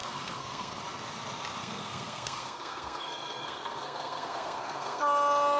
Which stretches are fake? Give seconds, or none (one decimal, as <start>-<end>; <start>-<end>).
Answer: 0.0-0.8; 1.6-5.0